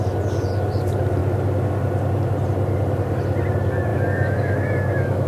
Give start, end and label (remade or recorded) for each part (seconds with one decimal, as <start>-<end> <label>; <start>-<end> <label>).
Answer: 0.0-3.9 recorded; 3.9-5.3 remade